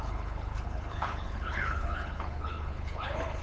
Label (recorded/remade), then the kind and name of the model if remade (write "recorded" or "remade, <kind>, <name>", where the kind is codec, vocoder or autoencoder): remade, codec, HILCodec